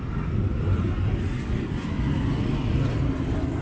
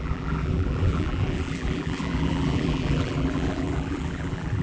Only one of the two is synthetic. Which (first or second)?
second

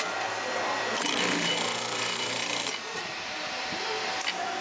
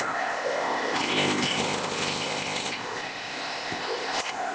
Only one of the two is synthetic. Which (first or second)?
second